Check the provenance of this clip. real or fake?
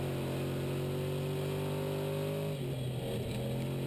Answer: real